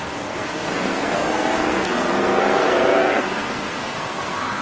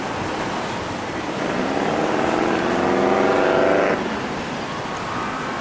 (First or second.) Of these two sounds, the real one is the second